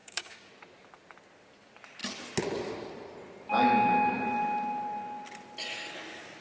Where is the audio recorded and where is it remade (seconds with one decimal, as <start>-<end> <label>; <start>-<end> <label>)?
0.0-0.5 remade; 0.5-6.4 recorded